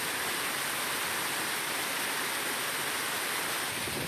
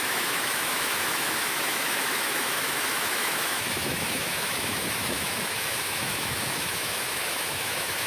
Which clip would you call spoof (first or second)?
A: second